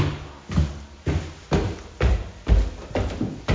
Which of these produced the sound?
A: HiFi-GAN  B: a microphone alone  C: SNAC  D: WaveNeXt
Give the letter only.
B